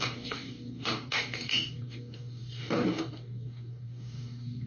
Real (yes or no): no